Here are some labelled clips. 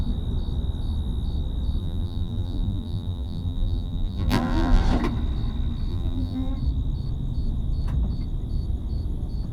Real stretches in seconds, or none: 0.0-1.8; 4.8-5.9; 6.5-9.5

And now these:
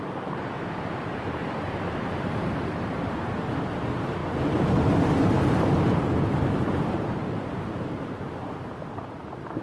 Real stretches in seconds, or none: none

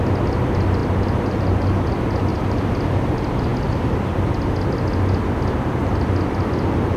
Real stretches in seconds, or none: 0.0-0.8; 1.4-2.3; 2.9-7.0